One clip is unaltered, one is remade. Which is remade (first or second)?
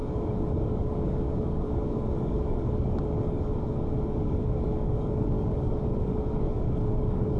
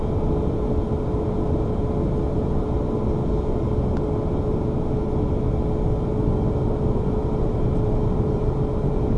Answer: first